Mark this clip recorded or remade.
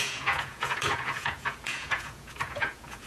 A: remade